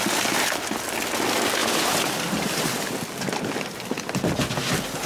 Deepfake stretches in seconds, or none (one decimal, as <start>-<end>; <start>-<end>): 1.6-2.6